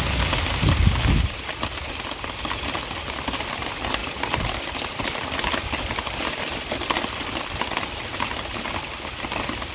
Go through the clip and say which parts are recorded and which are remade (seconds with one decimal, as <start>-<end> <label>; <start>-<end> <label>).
0.0-9.7 recorded